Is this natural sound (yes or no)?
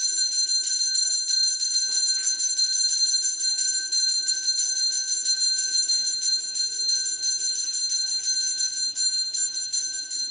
yes